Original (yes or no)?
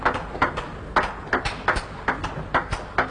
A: yes